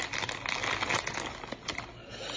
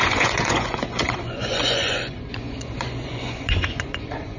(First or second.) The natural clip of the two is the first